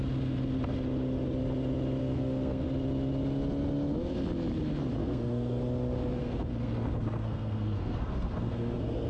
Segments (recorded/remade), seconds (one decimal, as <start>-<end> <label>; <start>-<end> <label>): 0.0-2.0 recorded; 2.0-2.6 remade; 2.6-5.0 recorded; 5.0-5.6 remade; 5.6-6.2 recorded; 6.2-9.1 remade